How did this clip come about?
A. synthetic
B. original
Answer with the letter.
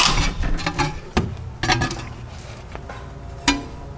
B